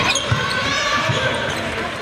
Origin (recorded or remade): remade